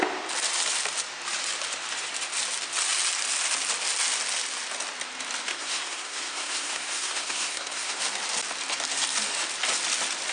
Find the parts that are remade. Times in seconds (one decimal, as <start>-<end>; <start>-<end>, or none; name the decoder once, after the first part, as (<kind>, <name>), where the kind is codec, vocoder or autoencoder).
5.5-8.0 (codec, SNAC)